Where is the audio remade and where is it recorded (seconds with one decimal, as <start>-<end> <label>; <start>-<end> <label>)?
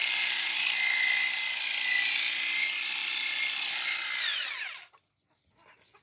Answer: 0.0-6.0 recorded